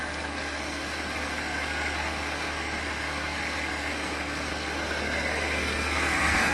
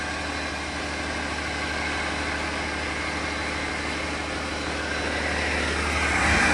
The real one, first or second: second